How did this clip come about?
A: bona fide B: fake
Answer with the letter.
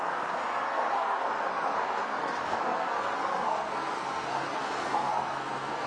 B